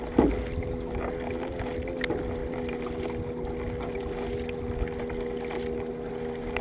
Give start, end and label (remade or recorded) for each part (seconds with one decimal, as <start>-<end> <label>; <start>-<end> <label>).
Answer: 0.0-6.6 recorded